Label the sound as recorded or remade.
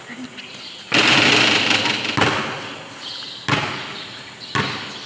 recorded